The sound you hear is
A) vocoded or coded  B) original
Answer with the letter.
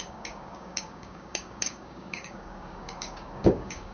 A